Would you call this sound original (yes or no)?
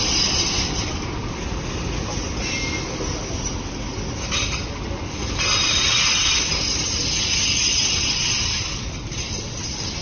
yes